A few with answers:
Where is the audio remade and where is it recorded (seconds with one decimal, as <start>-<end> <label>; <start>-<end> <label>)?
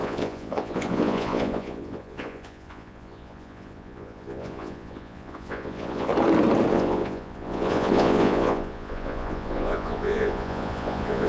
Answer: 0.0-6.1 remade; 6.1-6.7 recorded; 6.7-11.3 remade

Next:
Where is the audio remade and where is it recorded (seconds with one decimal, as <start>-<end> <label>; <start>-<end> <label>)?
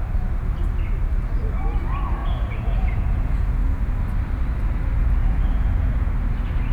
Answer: 0.0-2.2 recorded; 2.2-3.7 remade; 3.7-5.2 recorded; 5.2-6.1 remade; 6.1-6.7 recorded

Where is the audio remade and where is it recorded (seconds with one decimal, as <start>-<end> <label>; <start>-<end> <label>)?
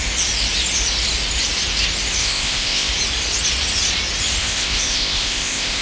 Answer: 0.0-2.2 recorded; 2.2-2.9 remade; 2.9-4.4 recorded; 4.4-5.8 remade